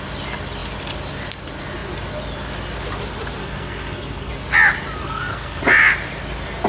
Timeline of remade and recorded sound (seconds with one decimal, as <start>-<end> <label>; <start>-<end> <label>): 0.0-3.4 recorded; 3.4-4.3 remade; 4.3-5.0 recorded; 5.0-5.6 remade; 5.6-6.7 recorded